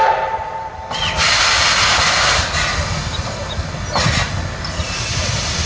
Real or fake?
real